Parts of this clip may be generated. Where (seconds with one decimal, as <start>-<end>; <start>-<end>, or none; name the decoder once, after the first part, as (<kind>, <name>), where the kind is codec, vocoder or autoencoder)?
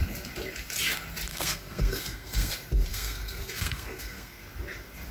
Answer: 1.3-2.5 (codec, SNAC); 2.9-4.4